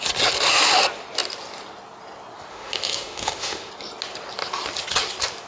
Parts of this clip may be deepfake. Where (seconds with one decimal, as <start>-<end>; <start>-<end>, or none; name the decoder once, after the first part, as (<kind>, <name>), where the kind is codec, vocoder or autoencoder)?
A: 2.5-3.7 (autoencoder, DAC-VAE)